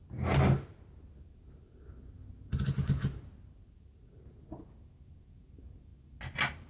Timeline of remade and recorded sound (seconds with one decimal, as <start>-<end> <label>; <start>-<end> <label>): 0.0-6.7 recorded